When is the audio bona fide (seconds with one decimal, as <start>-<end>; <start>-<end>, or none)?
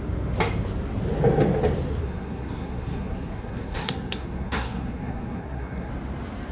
0.0-2.0; 5.9-6.5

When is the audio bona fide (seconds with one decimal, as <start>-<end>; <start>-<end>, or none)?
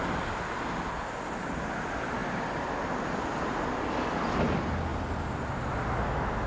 0.0-6.5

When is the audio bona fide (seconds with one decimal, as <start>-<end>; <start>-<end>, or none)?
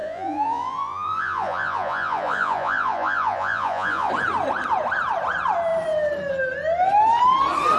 4.1-7.8